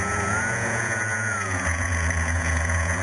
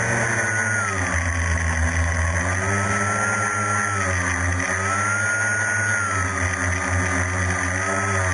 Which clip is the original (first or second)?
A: second